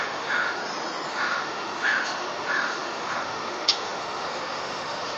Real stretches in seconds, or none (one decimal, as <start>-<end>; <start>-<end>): 0.6-1.1